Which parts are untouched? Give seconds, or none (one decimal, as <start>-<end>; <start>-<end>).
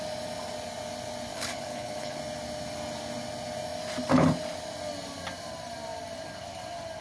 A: 0.0-1.3; 2.2-7.0